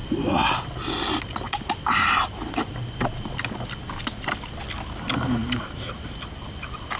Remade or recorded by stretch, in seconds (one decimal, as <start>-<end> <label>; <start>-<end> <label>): 0.0-5.4 recorded; 5.4-6.0 remade; 6.0-7.0 recorded